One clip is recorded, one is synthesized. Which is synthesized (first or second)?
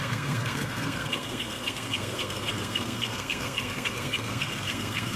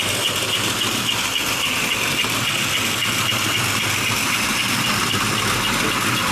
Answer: first